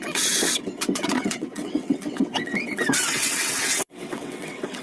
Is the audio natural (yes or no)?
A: no